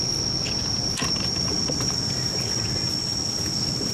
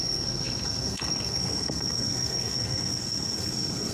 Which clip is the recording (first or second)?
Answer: first